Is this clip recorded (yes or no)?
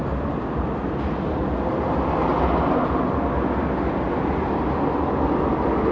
yes